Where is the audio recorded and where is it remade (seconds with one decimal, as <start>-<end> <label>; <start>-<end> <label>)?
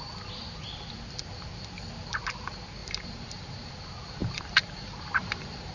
0.0-2.8 recorded; 2.8-3.7 remade; 3.7-4.2 recorded; 4.2-5.7 remade